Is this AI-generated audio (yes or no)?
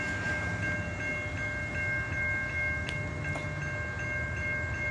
no